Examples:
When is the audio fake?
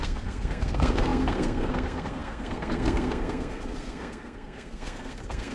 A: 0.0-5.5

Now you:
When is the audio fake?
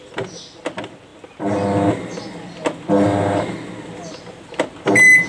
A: none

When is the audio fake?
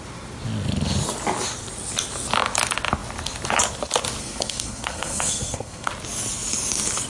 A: 4.2-5.9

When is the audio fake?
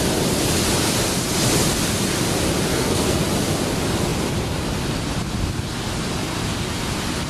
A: 2.7-3.2